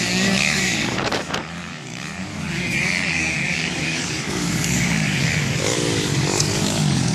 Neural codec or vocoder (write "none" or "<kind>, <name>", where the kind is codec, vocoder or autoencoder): codec, DAC